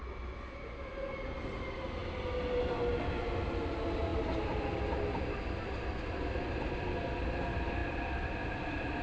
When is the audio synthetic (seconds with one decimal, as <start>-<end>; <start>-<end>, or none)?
none